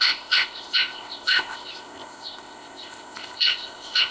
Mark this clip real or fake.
fake